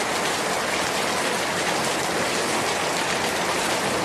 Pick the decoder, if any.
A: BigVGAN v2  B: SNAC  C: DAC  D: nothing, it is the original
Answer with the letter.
D